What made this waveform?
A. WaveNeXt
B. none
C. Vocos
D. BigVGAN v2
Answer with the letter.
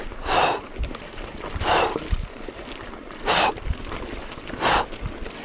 D